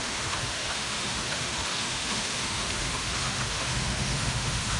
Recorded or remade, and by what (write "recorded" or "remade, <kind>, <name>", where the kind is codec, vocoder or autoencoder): remade, autoencoder, DAC-VAE